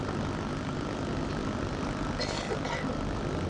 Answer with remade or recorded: recorded